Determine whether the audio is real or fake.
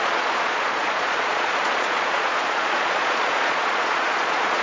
fake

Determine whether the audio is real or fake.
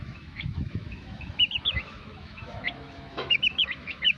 fake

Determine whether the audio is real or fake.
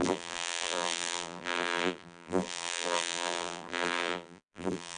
fake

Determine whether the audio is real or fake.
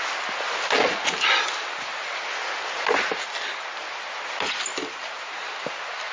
real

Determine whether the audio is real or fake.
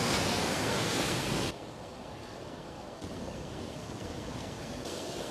fake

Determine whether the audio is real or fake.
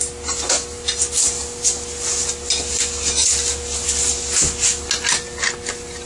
real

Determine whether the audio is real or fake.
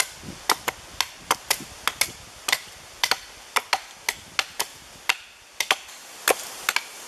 real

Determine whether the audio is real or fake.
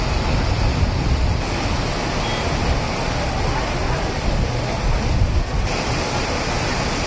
real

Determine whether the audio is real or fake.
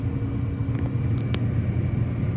real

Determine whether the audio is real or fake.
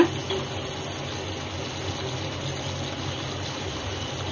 real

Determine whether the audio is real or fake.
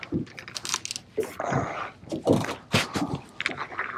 real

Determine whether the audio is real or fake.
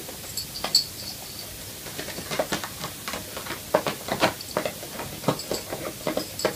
real